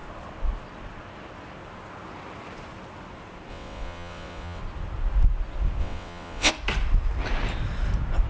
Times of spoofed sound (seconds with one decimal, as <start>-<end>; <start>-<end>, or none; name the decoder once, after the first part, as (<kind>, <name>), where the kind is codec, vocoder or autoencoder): 3.5-4.6 (vocoder, WaveNeXt); 5.8-6.5